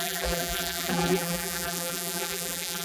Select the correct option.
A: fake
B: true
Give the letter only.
A